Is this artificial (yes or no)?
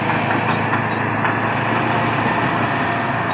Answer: no